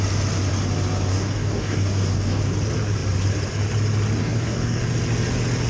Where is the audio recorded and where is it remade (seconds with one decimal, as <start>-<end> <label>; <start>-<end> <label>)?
0.0-1.1 recorded; 1.1-2.4 remade; 2.4-4.2 recorded; 4.2-4.8 remade; 4.8-5.7 recorded